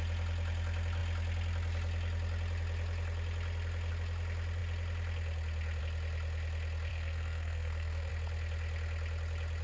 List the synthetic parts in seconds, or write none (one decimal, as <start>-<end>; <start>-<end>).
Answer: 6.9-8.1